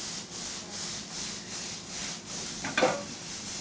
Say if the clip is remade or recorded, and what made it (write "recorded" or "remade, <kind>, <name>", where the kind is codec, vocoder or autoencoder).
recorded